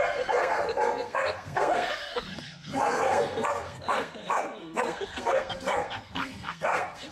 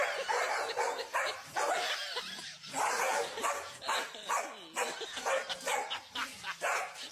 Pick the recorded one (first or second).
second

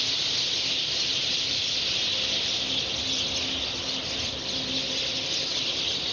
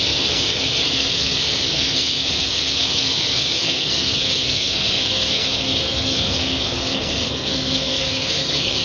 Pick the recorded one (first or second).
first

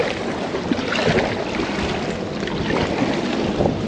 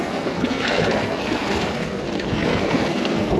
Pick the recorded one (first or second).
first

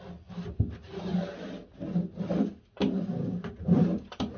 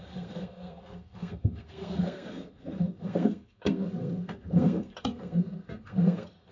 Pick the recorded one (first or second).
first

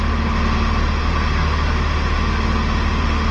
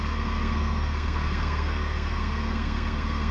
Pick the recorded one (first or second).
first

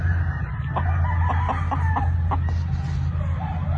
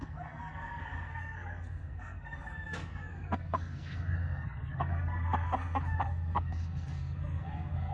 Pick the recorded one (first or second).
first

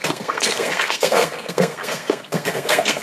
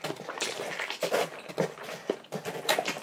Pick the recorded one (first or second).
second